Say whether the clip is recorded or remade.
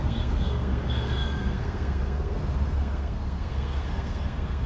remade